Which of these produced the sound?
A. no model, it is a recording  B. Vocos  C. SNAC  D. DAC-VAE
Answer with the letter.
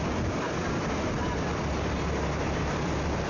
A